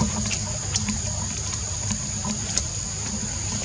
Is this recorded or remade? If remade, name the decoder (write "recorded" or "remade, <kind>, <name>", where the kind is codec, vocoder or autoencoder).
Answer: recorded